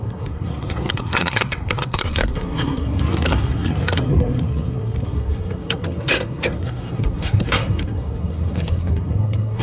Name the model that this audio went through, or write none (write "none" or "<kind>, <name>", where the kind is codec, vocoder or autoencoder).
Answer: codec, SNAC